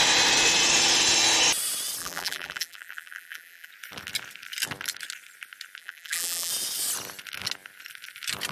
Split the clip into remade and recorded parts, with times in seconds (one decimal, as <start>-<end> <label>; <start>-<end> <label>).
0.0-2.0 recorded; 2.0-3.7 remade; 3.7-5.8 recorded; 5.8-6.5 remade; 6.5-8.5 recorded